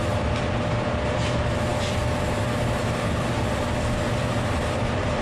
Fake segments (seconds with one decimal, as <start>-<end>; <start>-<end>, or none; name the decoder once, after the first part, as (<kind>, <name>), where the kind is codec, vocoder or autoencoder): none